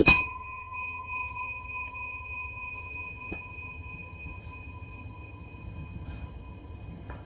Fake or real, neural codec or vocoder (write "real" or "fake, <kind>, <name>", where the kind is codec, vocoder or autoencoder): fake, vocoder, HiFi-GAN